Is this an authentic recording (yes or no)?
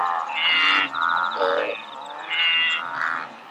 yes